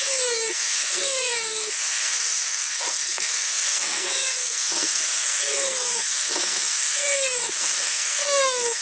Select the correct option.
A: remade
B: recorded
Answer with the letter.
A